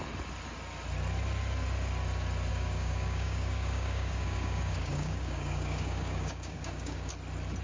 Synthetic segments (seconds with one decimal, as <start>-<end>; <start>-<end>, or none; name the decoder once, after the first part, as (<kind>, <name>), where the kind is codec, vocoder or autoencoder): 2.5-7.1 (codec, DAC)